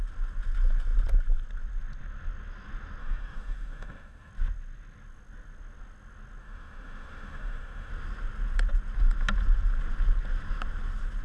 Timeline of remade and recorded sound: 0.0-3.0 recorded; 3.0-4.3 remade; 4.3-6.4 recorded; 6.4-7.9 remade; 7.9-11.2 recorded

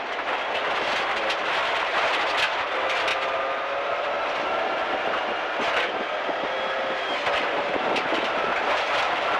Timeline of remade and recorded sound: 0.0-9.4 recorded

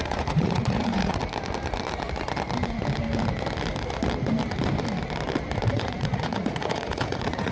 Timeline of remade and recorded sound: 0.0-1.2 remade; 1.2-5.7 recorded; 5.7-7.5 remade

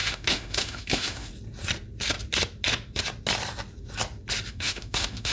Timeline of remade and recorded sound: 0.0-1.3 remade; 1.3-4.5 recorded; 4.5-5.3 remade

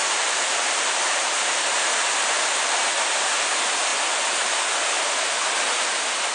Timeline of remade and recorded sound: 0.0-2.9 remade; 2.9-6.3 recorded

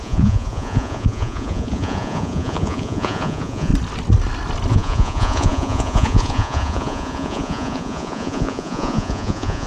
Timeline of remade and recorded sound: 0.0-3.7 remade; 3.7-4.7 recorded; 4.7-9.7 remade